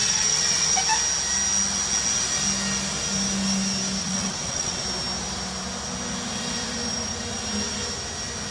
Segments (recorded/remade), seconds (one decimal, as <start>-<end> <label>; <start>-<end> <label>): 0.0-0.8 remade; 0.8-4.0 recorded; 4.0-4.8 remade; 4.8-8.5 recorded